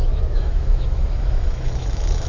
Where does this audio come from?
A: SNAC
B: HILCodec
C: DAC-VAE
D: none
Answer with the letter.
C